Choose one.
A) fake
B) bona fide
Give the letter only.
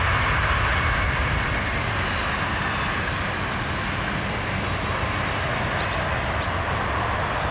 B